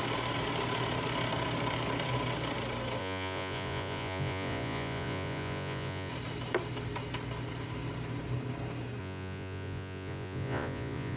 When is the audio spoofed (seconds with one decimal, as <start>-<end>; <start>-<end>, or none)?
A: 3.0-6.1; 9.0-11.2